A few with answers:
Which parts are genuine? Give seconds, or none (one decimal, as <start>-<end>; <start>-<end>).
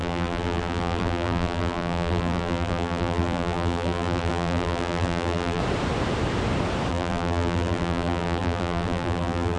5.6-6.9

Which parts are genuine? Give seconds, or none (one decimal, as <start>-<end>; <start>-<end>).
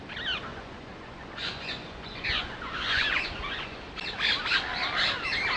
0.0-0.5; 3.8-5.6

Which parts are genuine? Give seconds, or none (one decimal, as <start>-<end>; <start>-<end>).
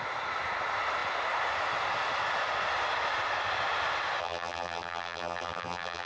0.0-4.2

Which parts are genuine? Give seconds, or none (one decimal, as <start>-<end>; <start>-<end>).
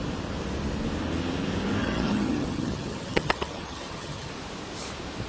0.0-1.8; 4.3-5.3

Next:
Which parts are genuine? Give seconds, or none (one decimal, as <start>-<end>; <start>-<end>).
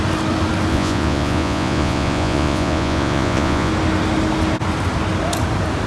0.0-0.7; 3.7-5.9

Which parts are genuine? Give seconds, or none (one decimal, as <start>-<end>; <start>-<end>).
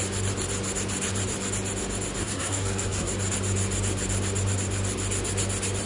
0.0-2.2; 3.1-5.9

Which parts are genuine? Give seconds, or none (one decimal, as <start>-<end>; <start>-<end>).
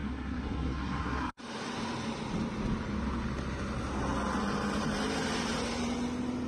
1.4-6.5